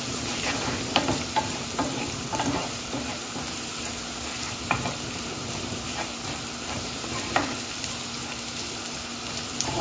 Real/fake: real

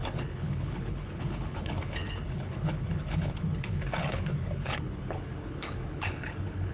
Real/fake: fake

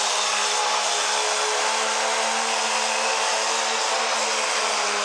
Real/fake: real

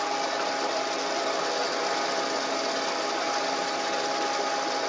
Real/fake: real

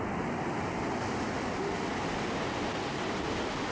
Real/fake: real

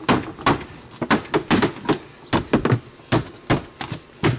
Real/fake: real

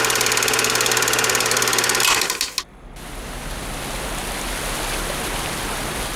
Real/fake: real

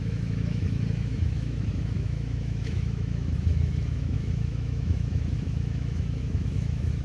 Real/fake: fake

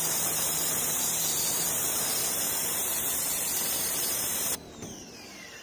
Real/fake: fake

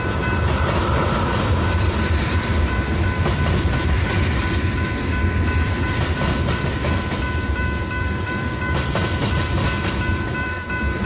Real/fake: fake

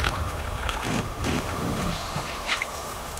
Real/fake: fake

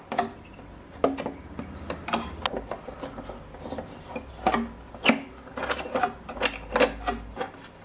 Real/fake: real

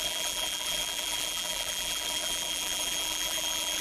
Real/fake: fake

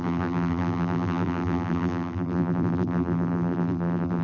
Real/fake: fake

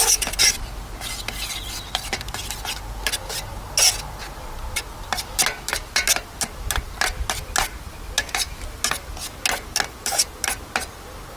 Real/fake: real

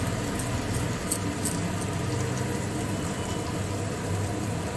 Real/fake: real